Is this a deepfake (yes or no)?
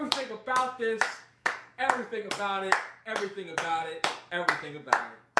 yes